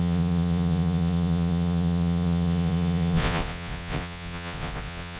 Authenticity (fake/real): fake